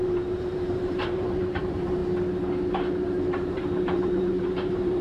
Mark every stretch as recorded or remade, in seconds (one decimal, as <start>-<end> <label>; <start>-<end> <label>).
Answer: 0.0-2.0 remade; 2.0-3.2 recorded; 3.2-5.0 remade